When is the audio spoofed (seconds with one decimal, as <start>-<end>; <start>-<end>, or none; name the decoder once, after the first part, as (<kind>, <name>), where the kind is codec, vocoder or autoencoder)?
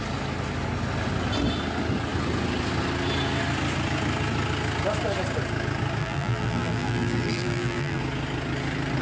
6.0-8.0 (vocoder, BigVGAN v2)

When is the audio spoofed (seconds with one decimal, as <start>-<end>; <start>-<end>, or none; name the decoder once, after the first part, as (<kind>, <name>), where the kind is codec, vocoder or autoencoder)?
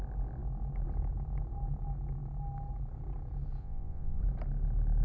3.6-4.2 (vocoder, Vocos)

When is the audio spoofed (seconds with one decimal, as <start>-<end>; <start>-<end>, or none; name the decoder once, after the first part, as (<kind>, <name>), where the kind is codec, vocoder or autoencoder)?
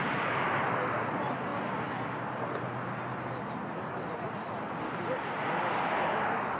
none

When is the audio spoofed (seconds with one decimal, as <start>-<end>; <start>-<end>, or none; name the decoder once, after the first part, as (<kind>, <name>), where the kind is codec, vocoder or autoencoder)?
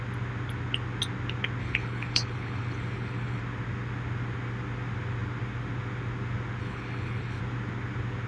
1.6-3.4 (codec, HILCodec); 6.6-7.4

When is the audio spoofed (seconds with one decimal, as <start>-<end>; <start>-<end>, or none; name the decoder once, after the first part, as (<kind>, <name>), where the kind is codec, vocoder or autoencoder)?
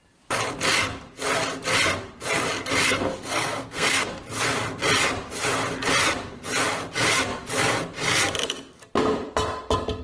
2.9-4.1 (codec, SNAC)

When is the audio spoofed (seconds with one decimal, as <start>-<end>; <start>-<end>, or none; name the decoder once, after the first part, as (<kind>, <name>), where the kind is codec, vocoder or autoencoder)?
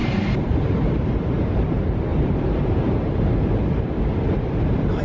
0.0-1.6 (vocoder, BigVGAN v2); 2.1-3.2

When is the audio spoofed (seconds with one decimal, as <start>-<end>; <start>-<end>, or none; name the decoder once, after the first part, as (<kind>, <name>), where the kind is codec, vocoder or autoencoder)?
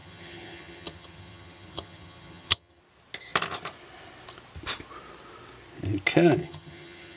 0.0-2.8 (vocoder, HiFi-GAN); 6.4-7.2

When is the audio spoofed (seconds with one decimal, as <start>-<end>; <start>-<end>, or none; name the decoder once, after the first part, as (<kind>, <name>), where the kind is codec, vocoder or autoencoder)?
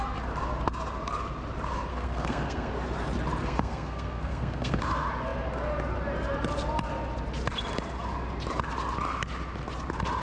1.9-2.7 (codec, SNAC); 3.4-4.8